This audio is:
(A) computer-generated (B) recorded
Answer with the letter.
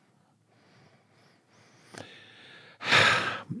B